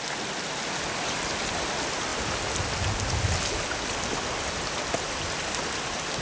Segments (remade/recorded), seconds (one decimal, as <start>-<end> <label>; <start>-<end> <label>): 0.0-6.2 recorded